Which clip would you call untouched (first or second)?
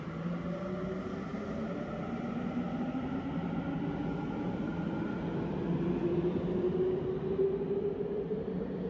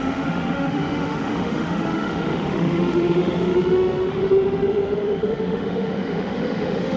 first